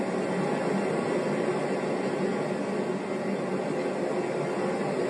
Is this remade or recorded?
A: recorded